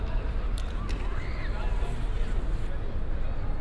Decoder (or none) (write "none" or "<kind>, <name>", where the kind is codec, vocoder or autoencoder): none